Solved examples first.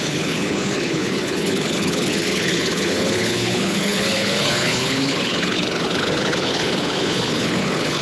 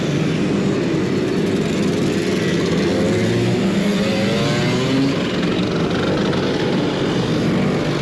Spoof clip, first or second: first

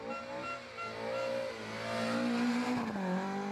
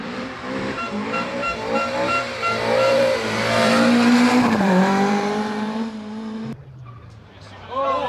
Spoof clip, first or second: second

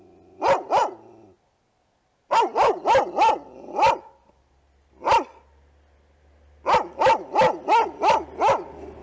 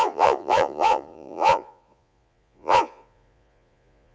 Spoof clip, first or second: second